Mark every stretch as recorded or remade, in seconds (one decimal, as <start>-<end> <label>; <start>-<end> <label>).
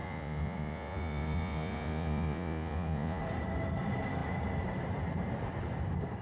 0.0-3.2 remade; 3.2-6.2 recorded